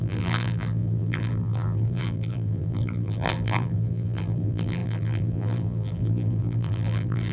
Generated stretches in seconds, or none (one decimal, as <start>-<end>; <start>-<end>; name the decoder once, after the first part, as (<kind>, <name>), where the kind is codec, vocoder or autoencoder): 0.0-7.3 (vocoder, BigVGAN v2)